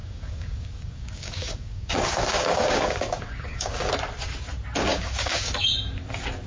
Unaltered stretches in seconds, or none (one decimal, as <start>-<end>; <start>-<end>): 3.9-4.9; 5.5-6.5